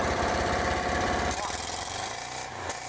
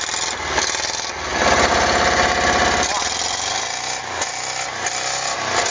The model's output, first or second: first